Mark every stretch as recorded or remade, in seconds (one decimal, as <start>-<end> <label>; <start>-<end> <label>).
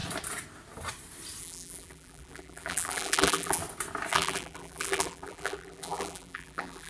0.0-1.4 recorded; 1.4-3.6 remade; 3.6-4.1 recorded; 4.1-6.9 remade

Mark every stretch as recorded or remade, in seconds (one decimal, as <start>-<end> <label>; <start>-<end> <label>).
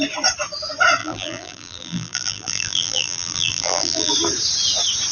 0.0-1.0 recorded; 1.0-4.1 remade; 4.1-5.1 recorded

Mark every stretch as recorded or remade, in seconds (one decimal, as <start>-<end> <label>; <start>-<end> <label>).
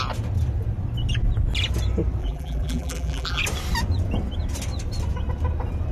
0.0-2.2 recorded; 2.2-3.4 remade; 3.4-5.9 recorded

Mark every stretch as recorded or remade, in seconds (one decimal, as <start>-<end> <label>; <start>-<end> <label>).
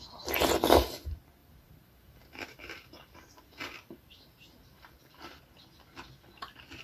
0.0-1.4 recorded; 1.4-5.4 remade; 5.4-6.8 recorded